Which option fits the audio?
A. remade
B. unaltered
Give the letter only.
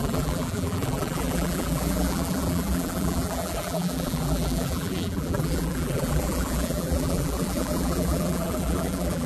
A